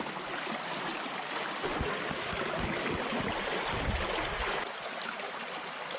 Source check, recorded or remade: recorded